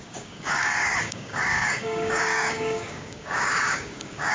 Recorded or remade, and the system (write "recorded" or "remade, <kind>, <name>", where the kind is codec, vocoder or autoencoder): remade, codec, DAC